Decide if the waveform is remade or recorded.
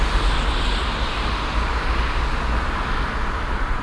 recorded